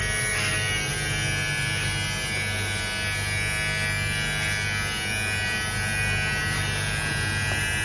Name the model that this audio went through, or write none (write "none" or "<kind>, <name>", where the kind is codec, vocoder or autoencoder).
none